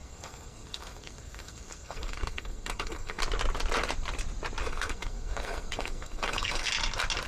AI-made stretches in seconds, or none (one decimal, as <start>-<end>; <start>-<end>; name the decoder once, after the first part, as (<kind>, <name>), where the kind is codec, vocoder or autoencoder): 0.0-3.2 (codec, SNAC); 4.6-6.7